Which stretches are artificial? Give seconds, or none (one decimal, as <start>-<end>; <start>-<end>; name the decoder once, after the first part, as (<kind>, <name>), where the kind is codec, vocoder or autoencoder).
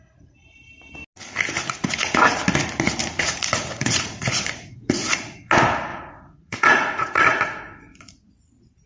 1.6-2.4 (vocoder, Vocos); 3.0-5.5; 5.9-8.3